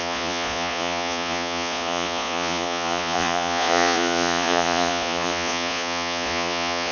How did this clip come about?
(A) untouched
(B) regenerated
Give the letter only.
B